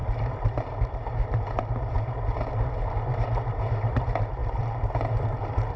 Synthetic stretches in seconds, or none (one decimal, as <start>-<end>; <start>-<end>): 0.0-5.8